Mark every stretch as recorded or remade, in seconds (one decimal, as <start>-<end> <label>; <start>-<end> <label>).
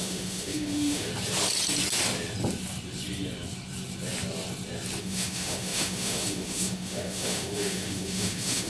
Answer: 0.0-1.1 remade; 1.1-5.0 recorded; 5.0-8.7 remade